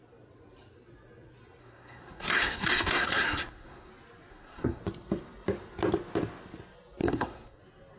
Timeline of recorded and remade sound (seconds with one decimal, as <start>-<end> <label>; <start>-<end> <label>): 0.0-1.6 recorded; 1.6-3.9 remade; 3.9-4.3 recorded; 4.3-4.8 remade; 4.8-7.0 recorded; 7.0-7.6 remade; 7.6-8.0 recorded